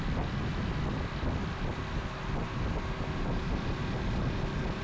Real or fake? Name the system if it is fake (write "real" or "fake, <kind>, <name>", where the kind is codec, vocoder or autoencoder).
real